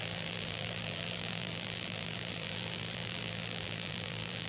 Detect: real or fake fake